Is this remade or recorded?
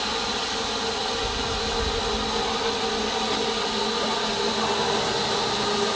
recorded